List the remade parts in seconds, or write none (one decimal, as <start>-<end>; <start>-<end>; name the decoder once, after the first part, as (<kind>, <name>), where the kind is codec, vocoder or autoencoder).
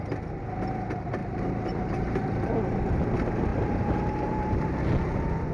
1.2-2.8 (vocoder, BigVGAN v2); 3.5-4.7